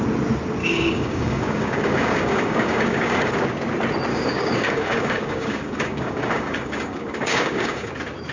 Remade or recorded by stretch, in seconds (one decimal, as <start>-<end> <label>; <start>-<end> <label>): 0.0-0.6 recorded; 0.6-3.3 remade; 3.3-4.1 recorded; 4.1-7.9 remade; 7.9-8.3 recorded